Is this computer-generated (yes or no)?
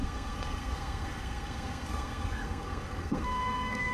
yes